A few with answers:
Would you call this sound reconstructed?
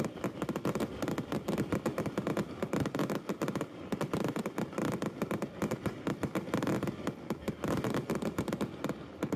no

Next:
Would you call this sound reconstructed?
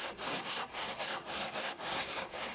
yes